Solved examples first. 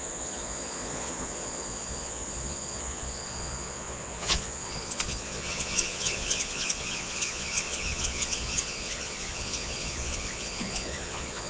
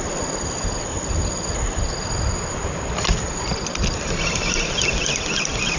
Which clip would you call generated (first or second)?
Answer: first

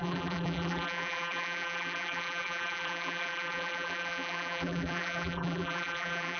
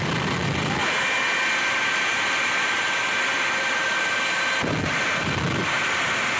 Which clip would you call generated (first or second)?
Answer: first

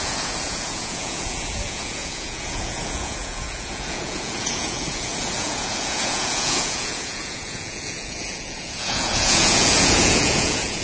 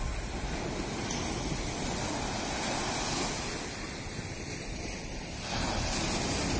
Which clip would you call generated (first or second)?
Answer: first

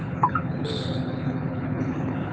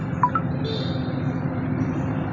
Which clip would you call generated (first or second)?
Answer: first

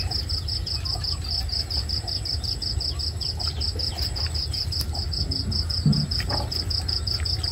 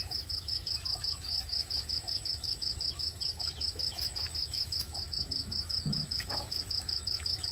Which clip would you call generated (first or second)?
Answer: second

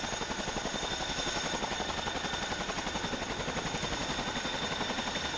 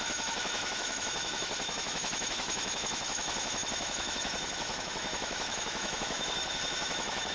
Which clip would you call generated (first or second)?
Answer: second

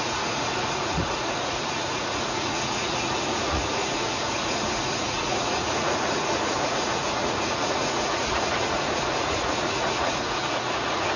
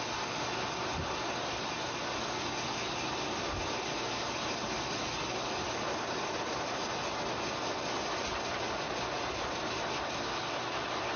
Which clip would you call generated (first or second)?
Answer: first